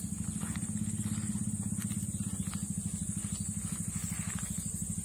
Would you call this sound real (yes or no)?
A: yes